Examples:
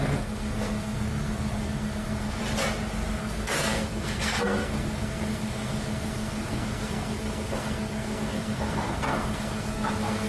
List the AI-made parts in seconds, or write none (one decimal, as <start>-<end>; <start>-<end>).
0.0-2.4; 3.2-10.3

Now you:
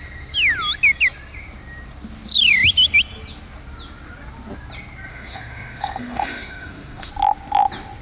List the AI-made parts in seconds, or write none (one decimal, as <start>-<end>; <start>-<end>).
5.1-7.1

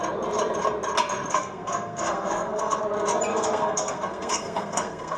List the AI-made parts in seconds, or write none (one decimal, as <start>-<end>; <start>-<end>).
1.3-2.8; 3.3-5.2

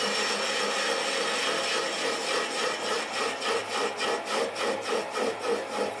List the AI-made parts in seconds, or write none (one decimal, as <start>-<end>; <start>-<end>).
none

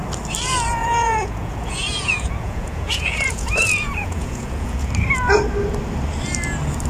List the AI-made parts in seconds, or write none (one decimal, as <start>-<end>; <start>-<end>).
0.8-4.9

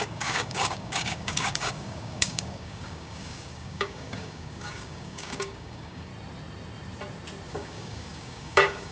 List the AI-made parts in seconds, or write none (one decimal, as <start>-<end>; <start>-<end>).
0.0-6.1; 7.5-8.9

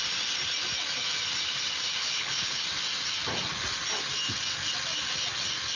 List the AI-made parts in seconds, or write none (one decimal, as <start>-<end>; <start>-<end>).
2.0-2.6